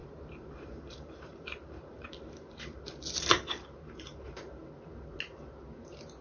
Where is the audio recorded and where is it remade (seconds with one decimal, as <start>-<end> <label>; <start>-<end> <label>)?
0.0-4.6 remade; 4.6-5.8 recorded; 5.8-6.2 remade